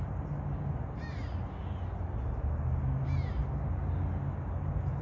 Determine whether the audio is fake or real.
real